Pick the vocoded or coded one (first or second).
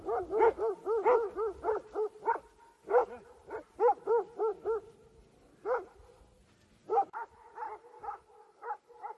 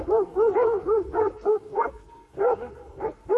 second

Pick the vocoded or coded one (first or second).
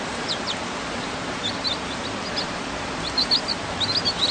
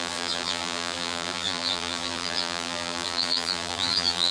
second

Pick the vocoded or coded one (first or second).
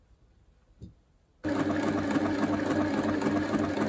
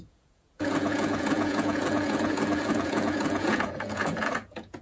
second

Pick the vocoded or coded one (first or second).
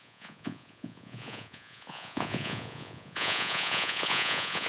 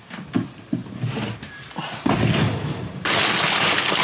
first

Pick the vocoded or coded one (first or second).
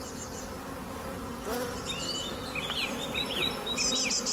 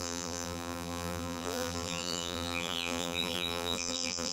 second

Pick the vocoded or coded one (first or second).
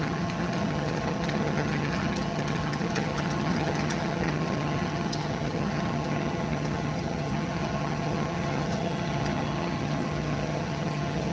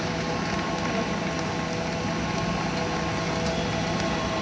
first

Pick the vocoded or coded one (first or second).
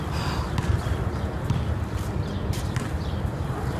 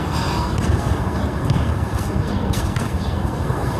second